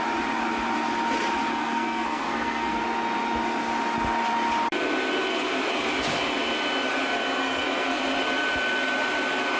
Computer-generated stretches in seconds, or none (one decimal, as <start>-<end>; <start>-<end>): 1.5-2.8; 7.4-8.0